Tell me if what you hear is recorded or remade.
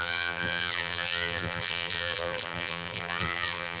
remade